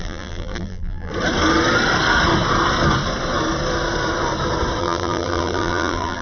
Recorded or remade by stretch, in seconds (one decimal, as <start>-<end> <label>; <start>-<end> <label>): 0.0-1.1 remade; 1.1-4.8 recorded; 4.8-6.2 remade